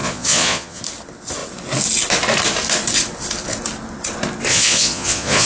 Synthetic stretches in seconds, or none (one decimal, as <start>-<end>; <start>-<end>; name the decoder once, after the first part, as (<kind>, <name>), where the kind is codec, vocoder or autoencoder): 0.0-0.8 (vocoder, Vocos); 4.5-5.5